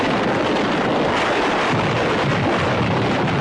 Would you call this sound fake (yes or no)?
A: no